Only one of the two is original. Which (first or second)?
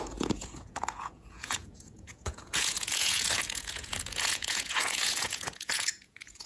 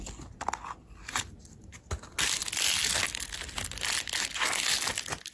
second